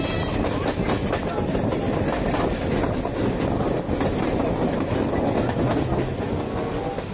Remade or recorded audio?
recorded